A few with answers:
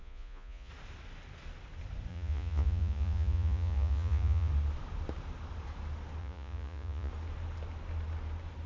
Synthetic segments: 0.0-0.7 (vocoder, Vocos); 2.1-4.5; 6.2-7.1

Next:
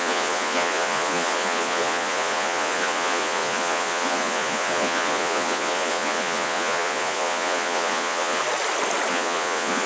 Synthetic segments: 0.0-8.4 (vocoder, Vocos); 9.1-9.9

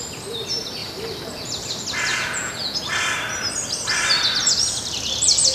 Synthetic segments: 2.1-2.8 (vocoder, Vocos)

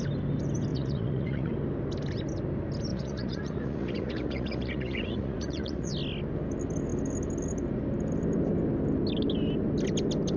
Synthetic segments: 0.7-1.5 (vocoder, Vocos); 2.9-5.9

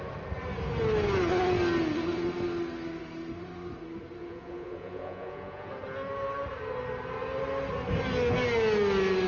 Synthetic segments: 4.2-5.7 (vocoder, Vocos)

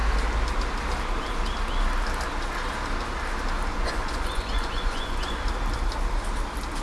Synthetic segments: 3.7-5.4 (vocoder, Vocos)

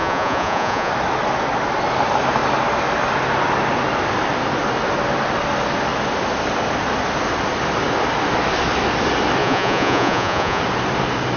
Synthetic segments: 0.0-0.9 (vocoder, Vocos); 9.4-10.6

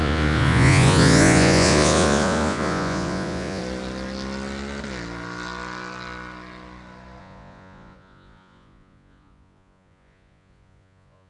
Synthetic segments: 0.0-3.6 (vocoder, Vocos); 7.2-11.3